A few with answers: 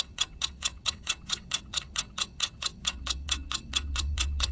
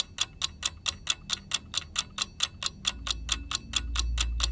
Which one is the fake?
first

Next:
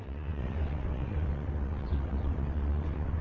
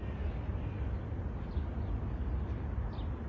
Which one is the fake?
first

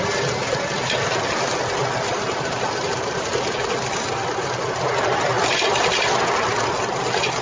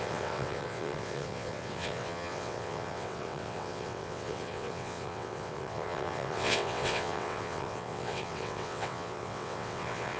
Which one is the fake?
second